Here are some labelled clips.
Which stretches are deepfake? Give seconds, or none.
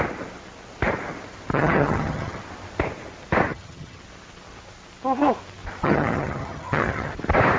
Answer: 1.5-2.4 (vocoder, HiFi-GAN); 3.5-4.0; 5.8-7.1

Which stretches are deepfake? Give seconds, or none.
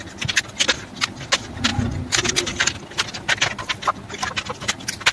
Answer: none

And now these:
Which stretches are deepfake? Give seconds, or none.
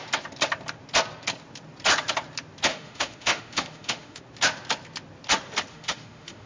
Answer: 2.7-4.2 (autoencoder, DAC-VAE); 5.7-6.5